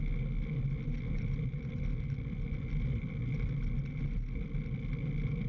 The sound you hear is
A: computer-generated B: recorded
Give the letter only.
B